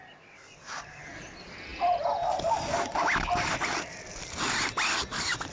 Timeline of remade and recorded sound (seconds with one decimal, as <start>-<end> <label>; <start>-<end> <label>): 0.0-5.5 remade